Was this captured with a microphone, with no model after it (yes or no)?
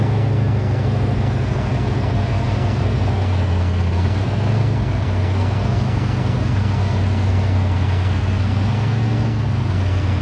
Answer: no